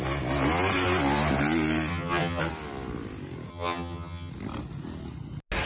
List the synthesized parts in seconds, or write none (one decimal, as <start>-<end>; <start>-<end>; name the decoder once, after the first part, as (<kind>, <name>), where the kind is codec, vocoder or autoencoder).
1.9-2.4 (vocoder, HiFi-GAN); 3.5-4.3